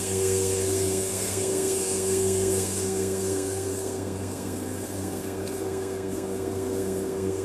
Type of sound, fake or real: fake